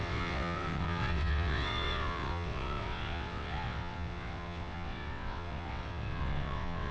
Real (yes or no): no